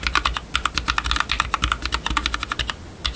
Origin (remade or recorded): recorded